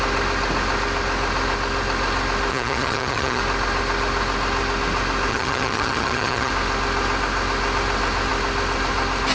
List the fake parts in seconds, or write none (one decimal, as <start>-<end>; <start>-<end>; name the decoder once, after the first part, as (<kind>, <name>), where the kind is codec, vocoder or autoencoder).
2.5-3.4 (vocoder, HiFi-GAN); 5.3-6.5